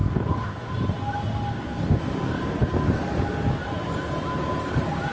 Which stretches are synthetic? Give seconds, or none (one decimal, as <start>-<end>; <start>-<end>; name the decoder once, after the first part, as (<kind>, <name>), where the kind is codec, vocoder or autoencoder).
0.0-0.7 (codec, DAC); 1.5-2.0